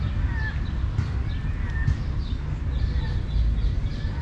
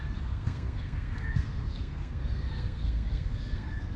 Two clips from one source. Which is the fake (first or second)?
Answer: second